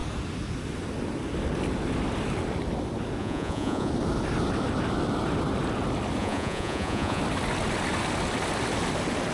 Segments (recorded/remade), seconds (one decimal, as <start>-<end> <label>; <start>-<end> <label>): 0.0-3.2 recorded; 3.2-3.9 remade; 3.9-6.2 recorded; 6.2-7.2 remade; 7.2-9.3 recorded